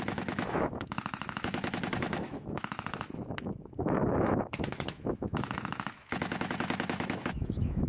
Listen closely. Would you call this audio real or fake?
fake